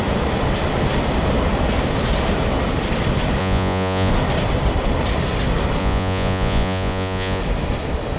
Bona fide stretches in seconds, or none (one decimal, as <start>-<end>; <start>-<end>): 0.0-3.4; 4.1-5.8; 7.4-8.2